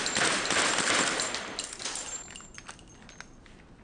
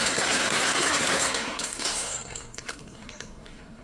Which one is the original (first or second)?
first